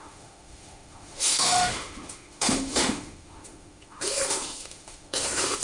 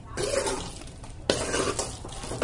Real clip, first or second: second